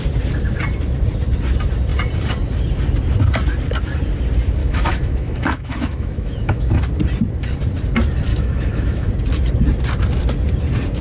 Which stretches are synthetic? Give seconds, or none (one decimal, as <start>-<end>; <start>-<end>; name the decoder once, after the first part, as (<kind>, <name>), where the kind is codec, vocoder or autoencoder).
4.6-6.8 (autoencoder, DAC-VAE); 8.3-9.1